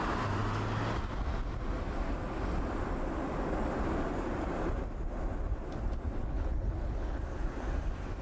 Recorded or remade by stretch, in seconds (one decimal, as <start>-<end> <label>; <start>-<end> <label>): 0.0-6.2 recorded; 6.2-7.2 remade; 7.2-8.2 recorded

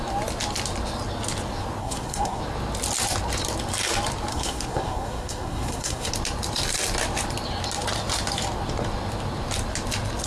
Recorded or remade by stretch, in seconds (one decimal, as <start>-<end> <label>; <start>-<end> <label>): 0.0-1.8 recorded; 1.8-2.4 remade; 2.4-4.3 recorded; 4.3-6.1 remade; 6.1-10.3 recorded

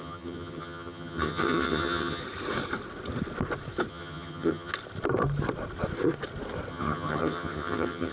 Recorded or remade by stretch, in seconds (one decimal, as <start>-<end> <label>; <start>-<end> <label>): 0.0-2.2 remade; 2.2-3.9 recorded; 3.9-4.7 remade; 4.7-6.7 recorded; 6.7-8.1 remade